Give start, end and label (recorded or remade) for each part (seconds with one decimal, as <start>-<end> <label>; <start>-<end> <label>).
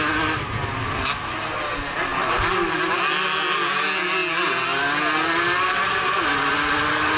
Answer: 0.0-7.2 recorded